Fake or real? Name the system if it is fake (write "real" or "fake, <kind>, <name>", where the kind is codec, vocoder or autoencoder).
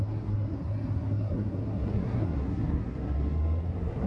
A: fake, codec, SNAC